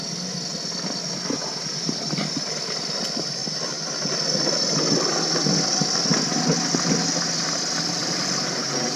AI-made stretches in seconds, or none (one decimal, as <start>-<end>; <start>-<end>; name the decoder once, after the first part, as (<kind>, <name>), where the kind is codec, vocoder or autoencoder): 0.5-1.1 (vocoder, BigVGAN v2); 3.4-3.9; 8.0-9.0